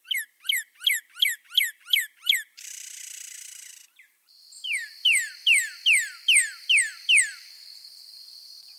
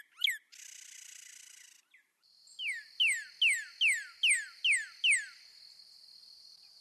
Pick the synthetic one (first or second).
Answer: first